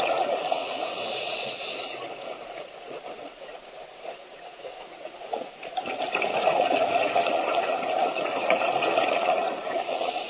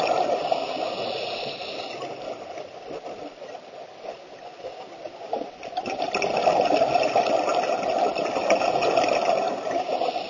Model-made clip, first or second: first